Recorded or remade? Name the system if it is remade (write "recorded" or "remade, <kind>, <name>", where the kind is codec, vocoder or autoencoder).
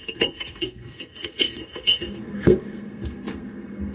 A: remade, codec, SNAC